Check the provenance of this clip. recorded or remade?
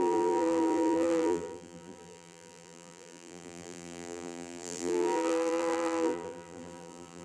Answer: remade